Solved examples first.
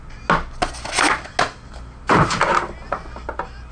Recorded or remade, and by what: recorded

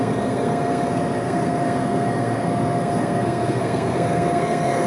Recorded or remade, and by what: remade, codec, SNAC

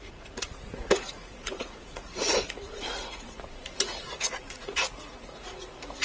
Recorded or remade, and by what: remade, vocoder, Vocos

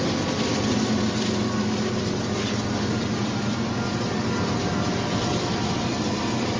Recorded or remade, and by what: recorded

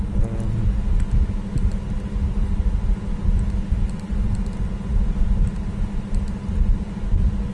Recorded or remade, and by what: recorded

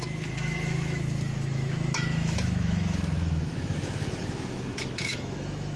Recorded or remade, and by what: remade, autoencoder, DAC-VAE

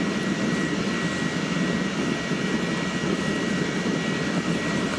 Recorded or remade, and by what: recorded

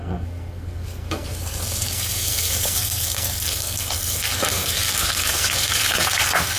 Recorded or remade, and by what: remade, codec, SNAC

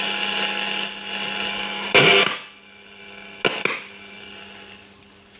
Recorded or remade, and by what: recorded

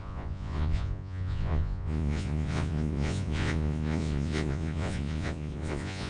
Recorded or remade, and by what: remade, vocoder, Vocos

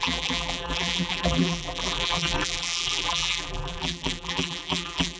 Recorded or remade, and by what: remade, vocoder, BigVGAN v2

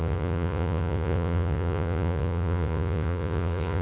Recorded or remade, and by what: remade, vocoder, Vocos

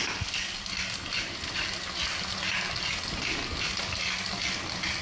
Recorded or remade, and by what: recorded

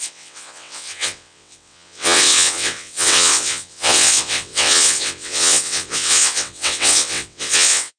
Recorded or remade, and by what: remade, vocoder, WaveNeXt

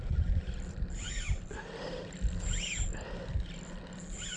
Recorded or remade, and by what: recorded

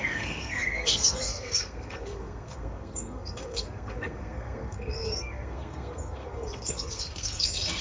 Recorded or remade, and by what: remade, codec, SNAC